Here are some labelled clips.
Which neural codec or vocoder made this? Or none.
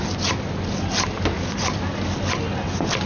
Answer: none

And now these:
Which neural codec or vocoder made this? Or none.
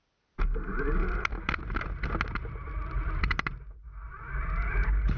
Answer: none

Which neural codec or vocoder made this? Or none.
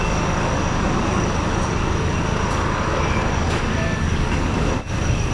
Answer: codec, DAC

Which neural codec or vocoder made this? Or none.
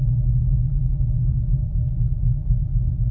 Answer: none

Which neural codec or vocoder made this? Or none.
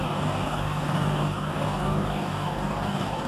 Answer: codec, DAC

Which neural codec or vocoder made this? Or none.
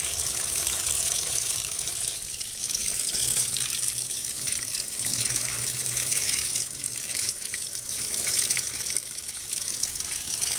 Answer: codec, DAC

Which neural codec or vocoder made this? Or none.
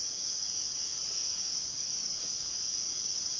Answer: codec, DAC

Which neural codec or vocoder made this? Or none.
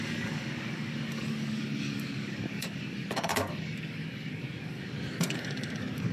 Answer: codec, DAC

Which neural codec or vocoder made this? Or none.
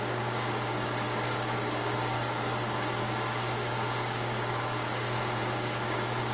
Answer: codec, DAC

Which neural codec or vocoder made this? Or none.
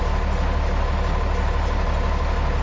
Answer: none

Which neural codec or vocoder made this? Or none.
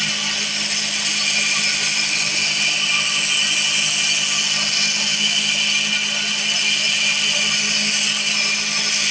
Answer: none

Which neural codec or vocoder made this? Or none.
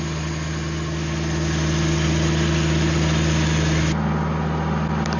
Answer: none